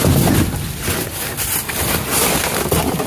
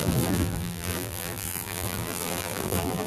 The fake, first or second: second